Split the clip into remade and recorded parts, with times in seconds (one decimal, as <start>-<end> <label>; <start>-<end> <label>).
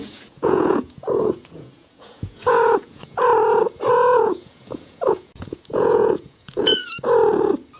0.0-3.3 remade; 3.3-3.9 recorded; 3.9-6.9 remade; 6.9-7.8 recorded